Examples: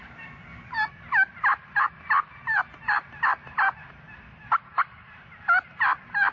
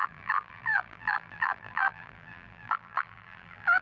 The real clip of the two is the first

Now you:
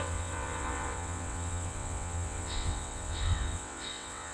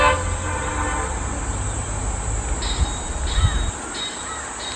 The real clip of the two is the second